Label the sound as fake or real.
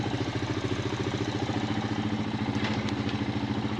real